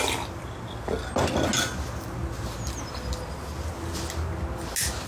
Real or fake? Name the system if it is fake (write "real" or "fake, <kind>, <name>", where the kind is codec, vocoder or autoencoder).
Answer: real